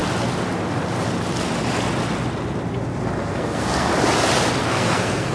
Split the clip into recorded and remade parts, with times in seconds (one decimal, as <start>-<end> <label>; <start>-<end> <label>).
0.0-3.2 recorded; 3.2-3.9 remade; 3.9-4.6 recorded; 4.6-5.3 remade